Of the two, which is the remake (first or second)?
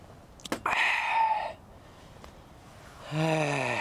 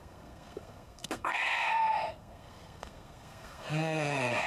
second